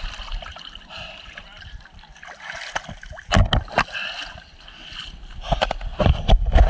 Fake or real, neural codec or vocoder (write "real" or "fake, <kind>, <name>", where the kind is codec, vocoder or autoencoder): real